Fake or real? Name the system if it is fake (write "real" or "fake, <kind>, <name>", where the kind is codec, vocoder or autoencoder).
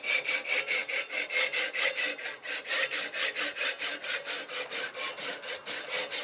real